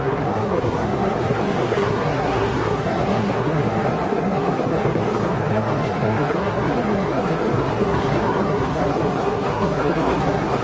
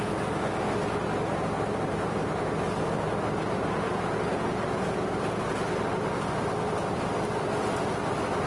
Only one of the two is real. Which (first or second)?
second